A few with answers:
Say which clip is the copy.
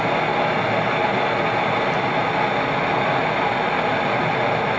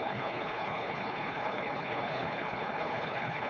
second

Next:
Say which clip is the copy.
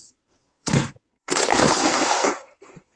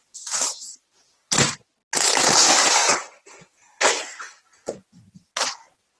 first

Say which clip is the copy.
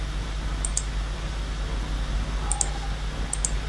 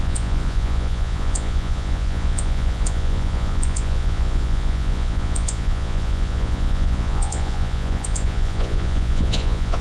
second